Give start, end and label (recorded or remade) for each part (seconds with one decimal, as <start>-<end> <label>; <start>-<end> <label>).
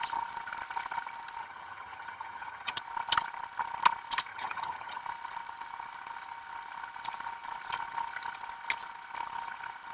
0.0-1.4 recorded; 1.4-2.8 remade; 2.8-4.3 recorded; 4.3-5.0 remade; 5.0-9.9 recorded